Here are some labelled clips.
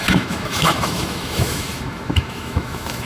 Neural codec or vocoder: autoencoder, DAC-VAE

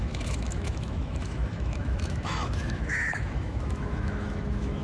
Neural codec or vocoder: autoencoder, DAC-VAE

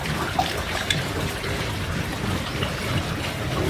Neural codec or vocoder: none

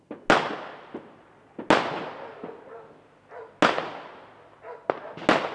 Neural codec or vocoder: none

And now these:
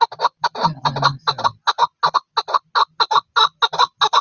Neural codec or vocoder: none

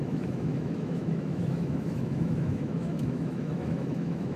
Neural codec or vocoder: autoencoder, DAC-VAE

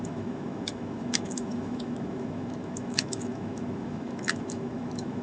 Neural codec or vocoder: autoencoder, DAC-VAE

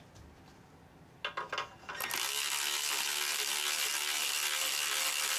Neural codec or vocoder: none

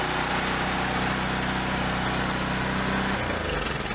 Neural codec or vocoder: none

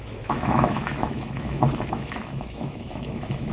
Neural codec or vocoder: autoencoder, DAC-VAE